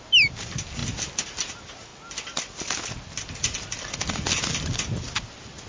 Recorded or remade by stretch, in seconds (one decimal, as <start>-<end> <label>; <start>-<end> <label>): 0.0-5.7 recorded